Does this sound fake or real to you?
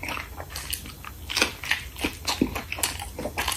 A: real